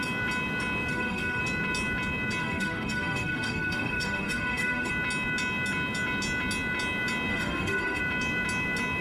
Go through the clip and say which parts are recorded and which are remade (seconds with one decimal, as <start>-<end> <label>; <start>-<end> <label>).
0.0-0.9 recorded; 0.9-1.4 remade; 1.4-2.4 recorded; 2.4-4.9 remade; 4.9-7.3 recorded; 7.3-8.0 remade; 8.0-9.0 recorded